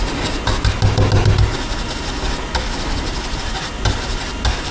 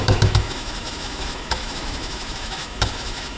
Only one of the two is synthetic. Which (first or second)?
second